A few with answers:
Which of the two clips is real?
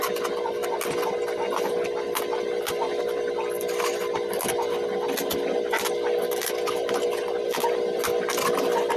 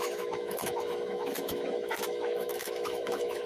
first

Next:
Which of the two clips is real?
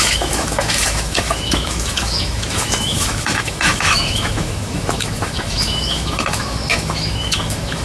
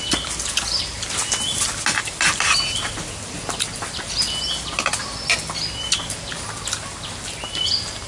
second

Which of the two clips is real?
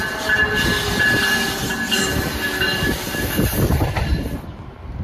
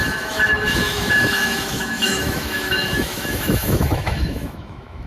first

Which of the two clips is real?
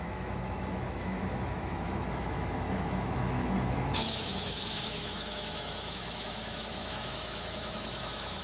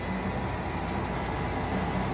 second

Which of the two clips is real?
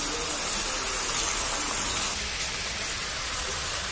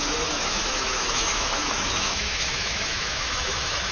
first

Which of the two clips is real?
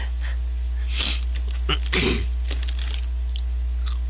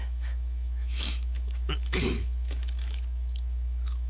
first